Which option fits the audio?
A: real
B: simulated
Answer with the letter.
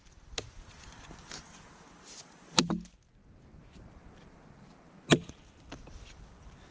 A